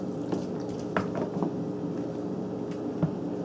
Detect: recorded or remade recorded